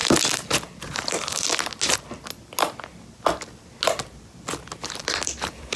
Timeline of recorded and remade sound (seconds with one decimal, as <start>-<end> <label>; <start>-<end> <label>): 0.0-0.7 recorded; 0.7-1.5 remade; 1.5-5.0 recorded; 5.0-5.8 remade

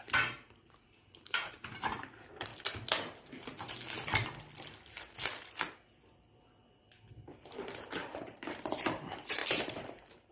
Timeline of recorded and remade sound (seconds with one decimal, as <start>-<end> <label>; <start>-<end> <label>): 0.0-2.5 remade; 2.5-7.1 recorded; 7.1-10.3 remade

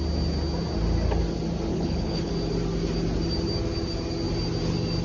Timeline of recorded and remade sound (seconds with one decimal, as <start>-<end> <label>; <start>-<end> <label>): 0.0-1.7 recorded; 1.7-2.3 remade; 2.3-5.0 recorded

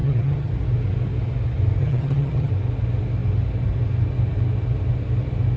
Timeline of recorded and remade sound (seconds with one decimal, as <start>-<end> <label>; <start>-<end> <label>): 0.0-0.5 remade; 0.5-1.8 recorded; 1.8-2.5 remade; 2.5-5.6 recorded

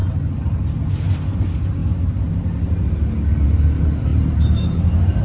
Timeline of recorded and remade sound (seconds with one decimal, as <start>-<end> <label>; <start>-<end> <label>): 0.0-4.1 recorded; 4.1-4.8 remade; 4.8-5.2 recorded

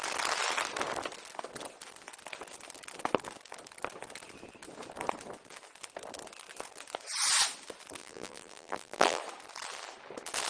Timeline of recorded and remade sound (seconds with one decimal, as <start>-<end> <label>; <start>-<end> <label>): 0.0-8.0 recorded; 8.0-9.2 remade; 9.2-10.5 recorded

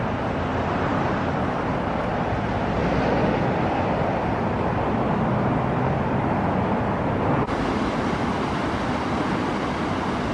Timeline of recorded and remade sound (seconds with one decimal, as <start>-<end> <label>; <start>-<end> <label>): 0.0-10.3 recorded